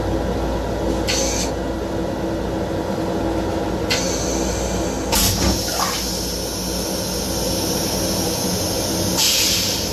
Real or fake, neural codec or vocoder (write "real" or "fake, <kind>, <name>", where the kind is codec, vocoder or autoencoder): real